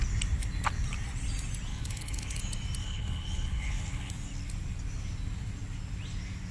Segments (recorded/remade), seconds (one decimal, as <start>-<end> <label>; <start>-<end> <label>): 0.0-1.7 recorded; 1.7-2.4 remade; 2.4-2.8 recorded; 2.8-4.1 remade; 4.1-6.5 recorded